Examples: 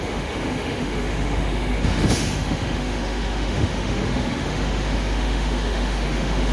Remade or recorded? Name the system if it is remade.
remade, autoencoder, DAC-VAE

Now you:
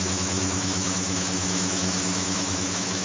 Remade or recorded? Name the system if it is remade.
remade, autoencoder, DAC-VAE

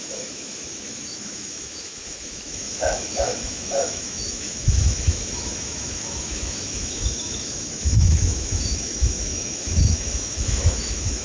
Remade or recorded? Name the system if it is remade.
remade, autoencoder, DAC-VAE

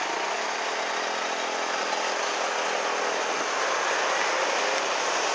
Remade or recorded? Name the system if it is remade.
recorded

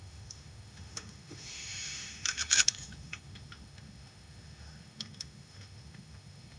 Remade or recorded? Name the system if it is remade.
remade, autoencoder, DAC-VAE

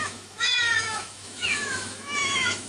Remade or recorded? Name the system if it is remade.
remade, autoencoder, DAC-VAE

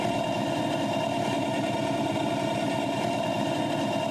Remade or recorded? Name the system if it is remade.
recorded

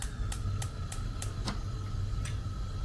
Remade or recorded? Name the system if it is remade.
recorded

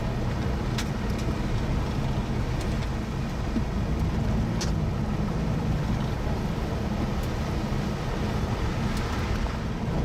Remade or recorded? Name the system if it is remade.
recorded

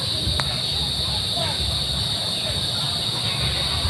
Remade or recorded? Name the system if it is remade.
recorded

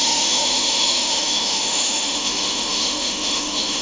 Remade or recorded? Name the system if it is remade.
remade, autoencoder, DAC-VAE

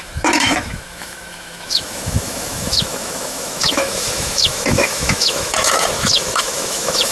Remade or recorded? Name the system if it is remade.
remade, autoencoder, DAC-VAE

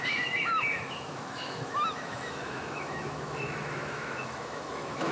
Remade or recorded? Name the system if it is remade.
remade, autoencoder, DAC-VAE